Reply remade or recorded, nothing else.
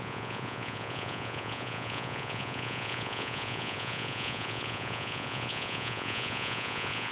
remade